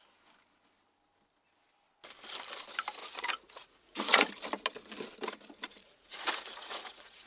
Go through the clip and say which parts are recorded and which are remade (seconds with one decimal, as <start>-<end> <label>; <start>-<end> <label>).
0.0-3.0 recorded; 3.0-4.3 remade; 4.3-5.8 recorded; 5.8-7.3 remade